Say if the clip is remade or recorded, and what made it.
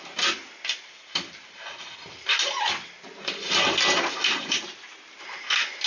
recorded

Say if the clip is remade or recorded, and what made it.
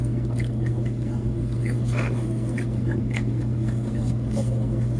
remade, codec, SNAC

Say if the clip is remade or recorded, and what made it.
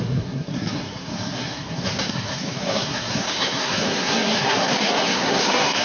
remade, codec, SNAC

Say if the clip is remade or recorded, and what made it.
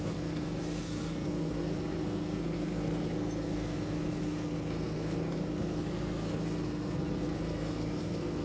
remade, codec, SNAC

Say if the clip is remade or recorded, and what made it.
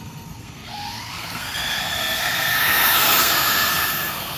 remade, codec, SNAC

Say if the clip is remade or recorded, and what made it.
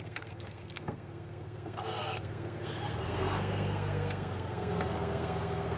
remade, codec, SNAC